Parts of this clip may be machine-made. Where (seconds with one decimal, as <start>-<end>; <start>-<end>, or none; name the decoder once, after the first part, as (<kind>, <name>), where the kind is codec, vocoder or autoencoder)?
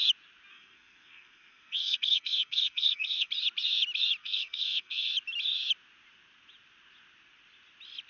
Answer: 0.5-3.3 (codec, SNAC); 4.2-5.1